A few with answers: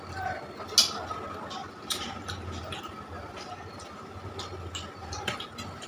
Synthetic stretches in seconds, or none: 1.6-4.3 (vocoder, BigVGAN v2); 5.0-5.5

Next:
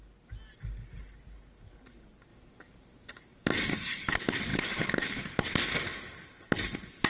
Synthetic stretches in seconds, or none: 2.3-4.1 (vocoder, BigVGAN v2); 4.5-5.2

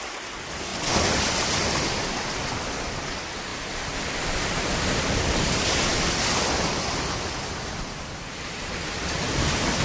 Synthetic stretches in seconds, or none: none

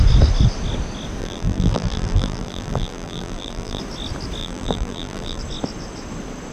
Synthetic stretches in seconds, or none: 1.2-3.8 (vocoder, BigVGAN v2); 4.4-5.4